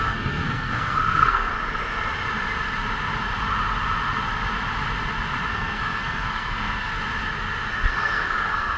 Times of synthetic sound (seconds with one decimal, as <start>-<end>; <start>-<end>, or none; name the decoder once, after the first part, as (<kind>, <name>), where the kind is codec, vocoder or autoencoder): 0.0-1.5 (codec, SNAC); 5.5-6.9; 7.7-8.8